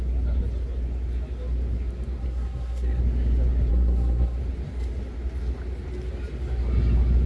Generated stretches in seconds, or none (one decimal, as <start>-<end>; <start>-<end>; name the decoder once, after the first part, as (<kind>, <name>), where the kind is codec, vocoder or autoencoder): 2.2-3.0 (codec, SNAC); 3.7-4.4